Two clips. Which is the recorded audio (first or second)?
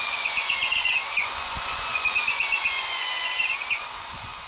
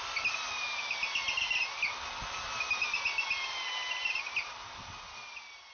second